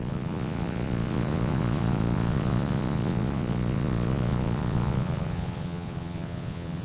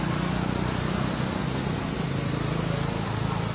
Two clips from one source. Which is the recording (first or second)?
second